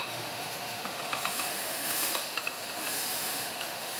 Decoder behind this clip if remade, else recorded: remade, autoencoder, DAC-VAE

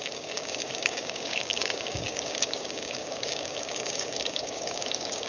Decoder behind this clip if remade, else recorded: remade, codec, DAC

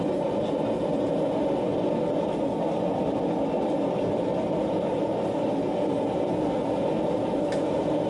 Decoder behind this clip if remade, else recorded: recorded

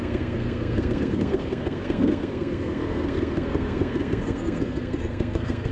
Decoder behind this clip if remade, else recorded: remade, codec, SNAC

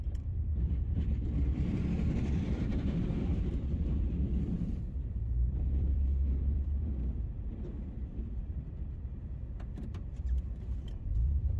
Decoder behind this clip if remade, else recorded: remade, vocoder, BigVGAN v2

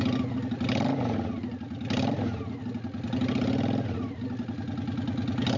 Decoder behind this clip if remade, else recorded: recorded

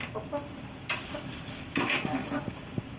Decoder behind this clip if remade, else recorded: recorded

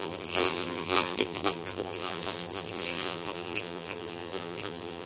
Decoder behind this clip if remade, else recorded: remade, vocoder, BigVGAN v2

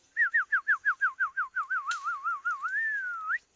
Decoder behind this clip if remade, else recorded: recorded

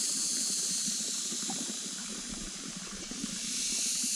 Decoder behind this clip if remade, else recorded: remade, vocoder, BigVGAN v2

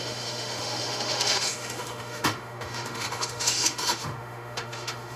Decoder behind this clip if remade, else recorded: remade, autoencoder, DAC-VAE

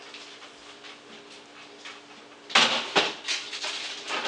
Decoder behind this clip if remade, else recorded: recorded